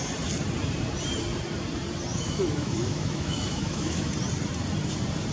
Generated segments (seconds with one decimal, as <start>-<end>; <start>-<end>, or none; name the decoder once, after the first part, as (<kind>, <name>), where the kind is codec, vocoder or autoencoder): 2.1-4.1 (autoencoder, DAC-VAE)